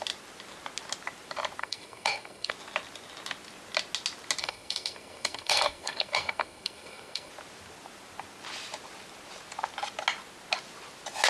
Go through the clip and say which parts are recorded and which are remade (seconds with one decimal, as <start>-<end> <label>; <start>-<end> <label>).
0.0-1.6 recorded; 1.6-2.5 remade; 2.5-4.4 recorded; 4.4-7.3 remade; 7.3-11.3 recorded